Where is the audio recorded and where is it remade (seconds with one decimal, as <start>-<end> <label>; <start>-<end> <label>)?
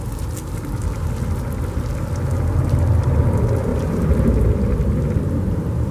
0.0-3.7 recorded; 3.7-4.3 remade; 4.3-5.9 recorded